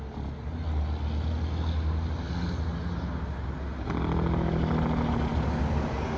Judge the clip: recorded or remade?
recorded